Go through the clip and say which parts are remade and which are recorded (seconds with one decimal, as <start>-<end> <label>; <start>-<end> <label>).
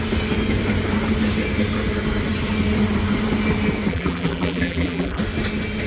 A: 0.0-3.9 recorded; 3.9-5.2 remade; 5.2-5.9 recorded